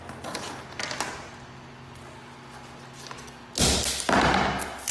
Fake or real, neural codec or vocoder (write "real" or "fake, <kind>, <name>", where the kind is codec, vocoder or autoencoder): real